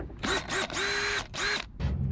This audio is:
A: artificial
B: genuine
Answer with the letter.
B